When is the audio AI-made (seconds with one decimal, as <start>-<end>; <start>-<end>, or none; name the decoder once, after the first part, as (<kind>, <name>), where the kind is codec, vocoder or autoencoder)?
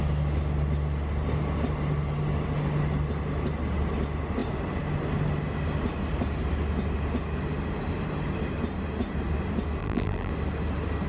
9.8-10.3 (vocoder, BigVGAN v2)